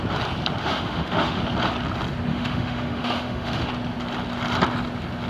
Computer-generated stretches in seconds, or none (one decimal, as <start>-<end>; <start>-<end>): 0.6-1.4; 2.3-3.7